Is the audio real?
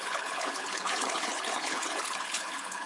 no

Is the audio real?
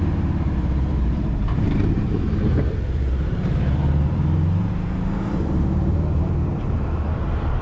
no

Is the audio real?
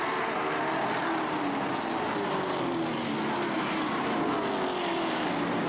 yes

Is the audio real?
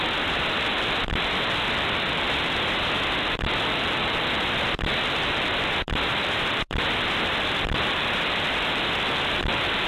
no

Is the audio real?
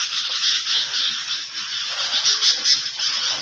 yes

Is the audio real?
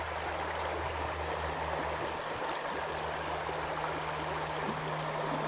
yes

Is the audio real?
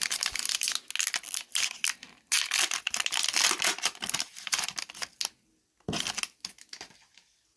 yes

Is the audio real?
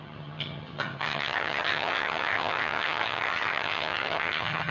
no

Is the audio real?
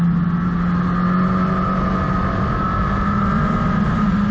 yes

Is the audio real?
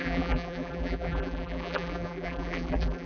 no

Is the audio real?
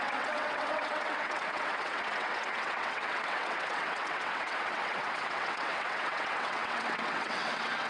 no